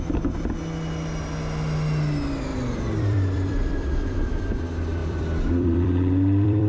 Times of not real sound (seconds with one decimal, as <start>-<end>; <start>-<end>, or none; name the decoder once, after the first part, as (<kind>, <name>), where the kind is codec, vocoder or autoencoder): 2.5-4.6 (vocoder, BigVGAN v2); 5.0-6.7